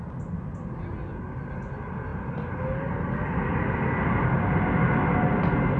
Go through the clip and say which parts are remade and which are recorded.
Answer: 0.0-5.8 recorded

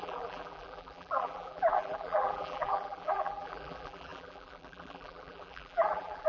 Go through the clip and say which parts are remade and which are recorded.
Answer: 0.0-6.3 remade

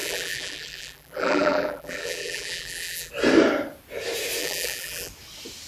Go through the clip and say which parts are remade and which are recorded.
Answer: 0.0-3.1 remade; 3.1-4.4 recorded; 4.4-5.1 remade; 5.1-5.7 recorded

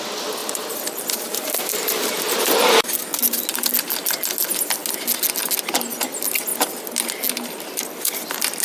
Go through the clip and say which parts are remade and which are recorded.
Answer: 0.0-0.4 recorded; 0.4-2.4 remade; 2.4-8.6 recorded

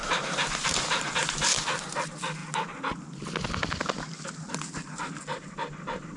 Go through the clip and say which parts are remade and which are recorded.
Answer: 0.0-1.1 remade; 1.1-6.2 recorded

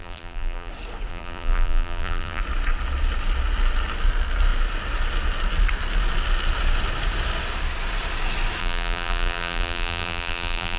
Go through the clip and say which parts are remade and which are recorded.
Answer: 0.0-0.7 remade; 0.7-1.1 recorded; 1.1-2.4 remade; 2.4-8.6 recorded; 8.6-10.8 remade

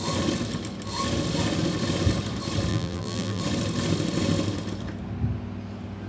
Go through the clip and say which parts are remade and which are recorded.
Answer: 0.0-2.7 recorded; 2.7-3.4 remade; 3.4-6.1 recorded